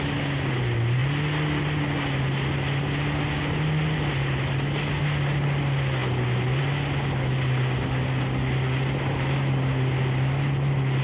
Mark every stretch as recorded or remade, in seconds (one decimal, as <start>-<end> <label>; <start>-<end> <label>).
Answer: 0.0-11.0 recorded